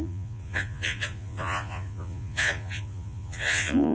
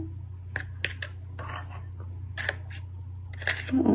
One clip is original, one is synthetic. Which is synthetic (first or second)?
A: first